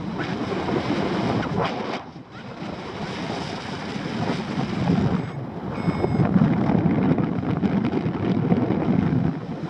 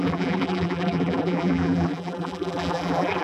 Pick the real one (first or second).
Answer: first